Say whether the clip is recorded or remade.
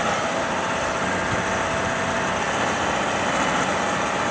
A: recorded